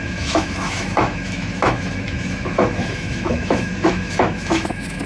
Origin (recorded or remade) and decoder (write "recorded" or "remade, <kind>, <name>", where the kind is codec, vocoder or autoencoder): remade, autoencoder, DAC-VAE